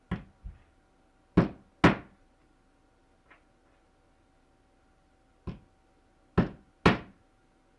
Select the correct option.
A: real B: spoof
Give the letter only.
A